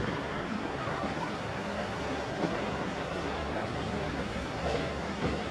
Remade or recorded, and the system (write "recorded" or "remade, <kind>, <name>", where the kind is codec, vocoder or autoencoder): remade, codec, SNAC